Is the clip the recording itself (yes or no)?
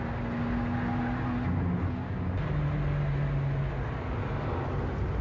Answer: yes